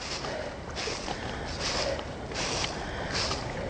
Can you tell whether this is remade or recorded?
recorded